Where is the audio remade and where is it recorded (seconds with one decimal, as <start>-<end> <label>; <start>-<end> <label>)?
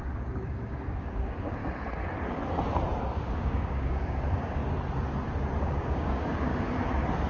0.0-1.6 remade; 1.6-3.0 recorded; 3.0-4.6 remade; 4.6-5.6 recorded; 5.6-6.5 remade; 6.5-7.3 recorded